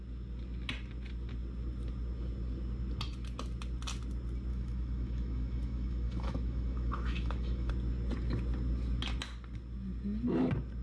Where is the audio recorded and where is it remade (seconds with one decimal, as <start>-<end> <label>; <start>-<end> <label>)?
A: 0.0-4.5 recorded; 4.5-7.7 remade; 7.7-10.8 recorded